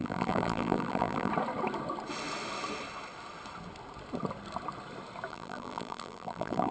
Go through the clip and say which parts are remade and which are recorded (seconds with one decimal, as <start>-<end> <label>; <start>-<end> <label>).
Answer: 0.0-1.3 remade; 1.3-5.3 recorded; 5.3-6.7 remade